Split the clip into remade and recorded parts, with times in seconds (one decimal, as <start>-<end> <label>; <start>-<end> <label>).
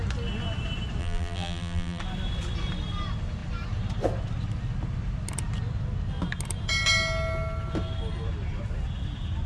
0.0-1.0 recorded; 1.0-2.0 remade; 2.0-9.5 recorded